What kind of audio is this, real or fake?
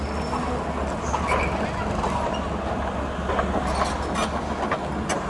real